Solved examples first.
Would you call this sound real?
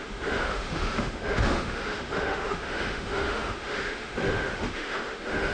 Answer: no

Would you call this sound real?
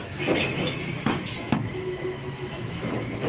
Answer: no